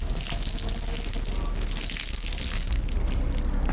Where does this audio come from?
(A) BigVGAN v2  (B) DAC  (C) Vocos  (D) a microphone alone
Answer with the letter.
D